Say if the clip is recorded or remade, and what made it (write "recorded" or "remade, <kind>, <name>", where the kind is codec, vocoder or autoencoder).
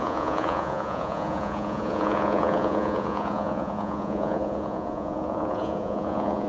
remade, vocoder, Vocos